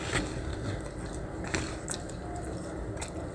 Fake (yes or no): no